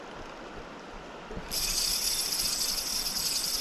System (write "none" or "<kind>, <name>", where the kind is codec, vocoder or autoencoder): none